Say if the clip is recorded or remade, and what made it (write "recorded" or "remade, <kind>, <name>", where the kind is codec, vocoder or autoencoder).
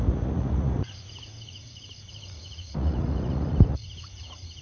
remade, vocoder, Vocos